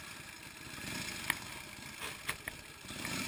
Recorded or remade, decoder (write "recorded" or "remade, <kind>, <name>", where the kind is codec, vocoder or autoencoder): recorded